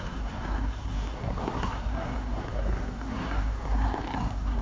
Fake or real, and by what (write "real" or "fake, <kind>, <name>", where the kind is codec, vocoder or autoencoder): fake, codec, SNAC